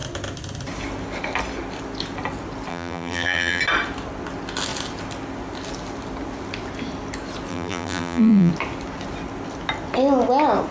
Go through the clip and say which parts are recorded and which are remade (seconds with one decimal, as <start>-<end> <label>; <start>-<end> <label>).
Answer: 0.0-2.7 recorded; 2.7-3.6 remade; 3.6-7.5 recorded; 7.5-8.5 remade; 8.5-10.7 recorded